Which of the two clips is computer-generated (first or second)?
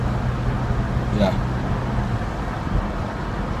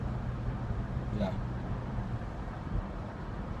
second